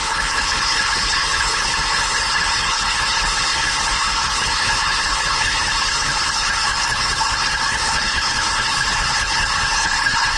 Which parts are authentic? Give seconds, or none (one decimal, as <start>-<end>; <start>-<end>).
none